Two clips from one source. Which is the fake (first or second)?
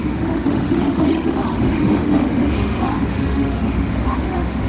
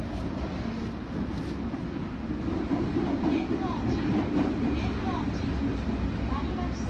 first